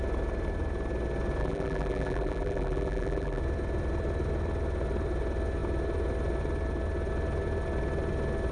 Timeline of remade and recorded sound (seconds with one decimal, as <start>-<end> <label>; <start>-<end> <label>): 0.0-1.4 recorded; 1.4-3.4 remade; 3.4-8.5 recorded